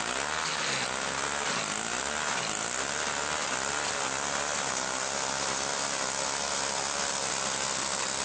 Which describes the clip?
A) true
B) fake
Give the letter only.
A